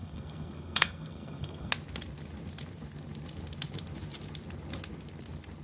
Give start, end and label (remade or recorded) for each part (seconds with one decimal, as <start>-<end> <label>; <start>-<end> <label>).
0.0-1.7 remade; 1.7-5.6 recorded